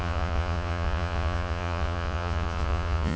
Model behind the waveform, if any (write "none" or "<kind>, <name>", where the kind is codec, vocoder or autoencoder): vocoder, Vocos